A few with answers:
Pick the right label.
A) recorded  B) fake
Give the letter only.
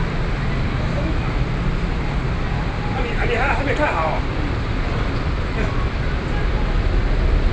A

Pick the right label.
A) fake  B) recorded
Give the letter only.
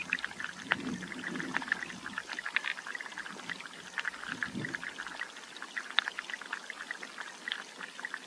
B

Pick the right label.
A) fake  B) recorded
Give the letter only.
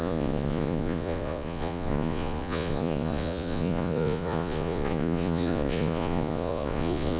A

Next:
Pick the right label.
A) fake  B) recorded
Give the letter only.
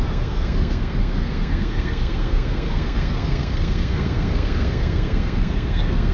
A